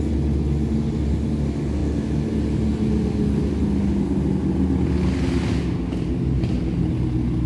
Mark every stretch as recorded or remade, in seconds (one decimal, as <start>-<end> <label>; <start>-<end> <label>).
0.0-7.5 recorded